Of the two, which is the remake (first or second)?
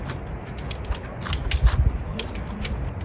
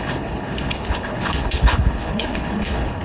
second